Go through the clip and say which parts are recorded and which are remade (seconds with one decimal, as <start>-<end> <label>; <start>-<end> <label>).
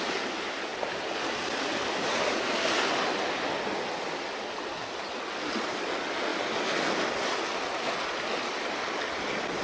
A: 0.0-9.6 recorded